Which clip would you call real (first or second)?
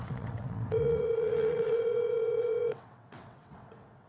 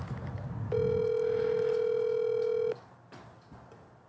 second